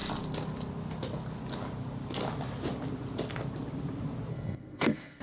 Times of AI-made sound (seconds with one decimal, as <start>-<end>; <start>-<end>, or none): 4.3-5.2